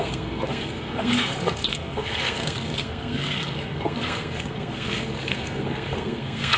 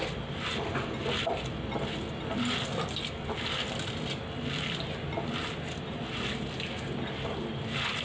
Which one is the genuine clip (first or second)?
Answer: second